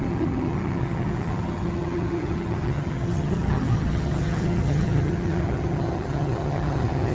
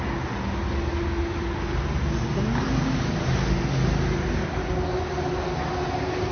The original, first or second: second